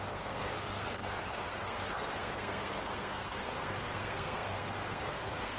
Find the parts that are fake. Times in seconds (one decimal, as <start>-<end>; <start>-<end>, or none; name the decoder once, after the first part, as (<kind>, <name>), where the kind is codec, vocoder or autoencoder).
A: 0.0-5.6 (codec, SNAC)